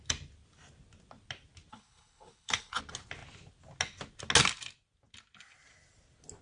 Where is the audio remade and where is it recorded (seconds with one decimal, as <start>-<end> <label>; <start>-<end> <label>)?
0.0-1.7 recorded; 1.7-2.8 remade; 2.8-6.4 recorded